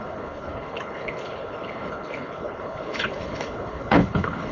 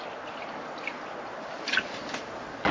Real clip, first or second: second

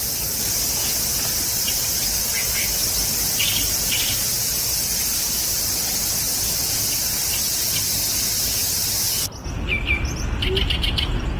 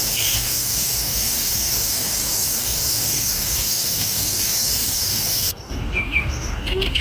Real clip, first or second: first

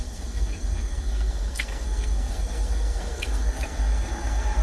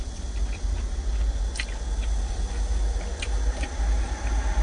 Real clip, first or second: second